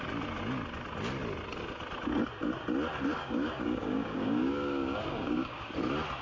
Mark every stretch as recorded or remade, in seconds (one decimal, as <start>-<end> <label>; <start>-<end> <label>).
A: 0.0-3.2 recorded; 3.2-5.7 remade; 5.7-6.2 recorded